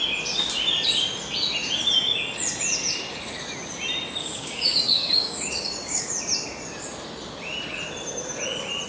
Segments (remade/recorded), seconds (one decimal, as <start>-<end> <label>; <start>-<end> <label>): 0.0-4.2 recorded; 4.2-6.1 remade; 6.1-8.9 recorded

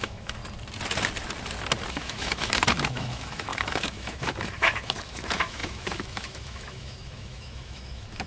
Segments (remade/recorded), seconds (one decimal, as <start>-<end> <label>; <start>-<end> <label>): 0.0-0.4 remade; 0.4-1.9 recorded; 1.9-8.3 remade